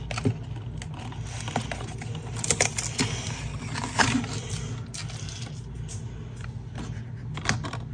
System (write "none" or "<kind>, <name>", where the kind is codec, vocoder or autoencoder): none